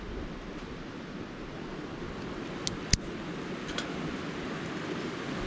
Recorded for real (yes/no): yes